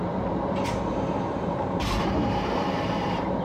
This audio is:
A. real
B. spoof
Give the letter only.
B